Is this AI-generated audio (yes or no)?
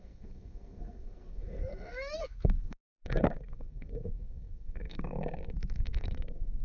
yes